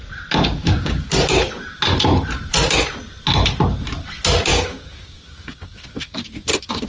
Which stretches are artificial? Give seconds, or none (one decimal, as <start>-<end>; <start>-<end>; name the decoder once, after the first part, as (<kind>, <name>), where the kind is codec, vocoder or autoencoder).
0.6-1.1 (codec, DAC); 4.5-6.9